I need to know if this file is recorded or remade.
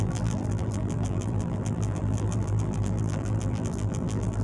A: remade